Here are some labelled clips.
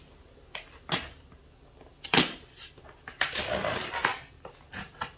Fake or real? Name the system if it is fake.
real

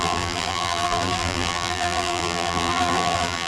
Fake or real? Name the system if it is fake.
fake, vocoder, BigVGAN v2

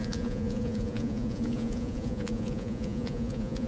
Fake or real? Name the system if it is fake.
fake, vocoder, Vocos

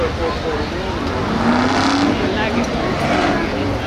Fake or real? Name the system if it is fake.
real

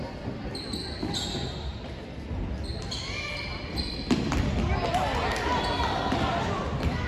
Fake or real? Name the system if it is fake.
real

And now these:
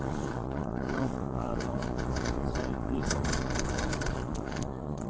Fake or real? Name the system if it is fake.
fake, vocoder, Vocos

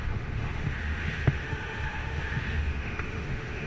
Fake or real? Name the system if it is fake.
fake, autoencoder, DAC-VAE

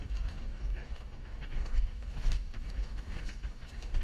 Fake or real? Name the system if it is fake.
fake, codec, DAC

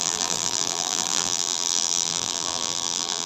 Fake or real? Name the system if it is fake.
fake, vocoder, BigVGAN v2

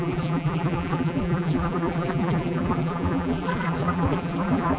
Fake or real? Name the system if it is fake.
fake, vocoder, BigVGAN v2